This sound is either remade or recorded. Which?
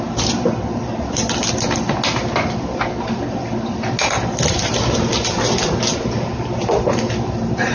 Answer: recorded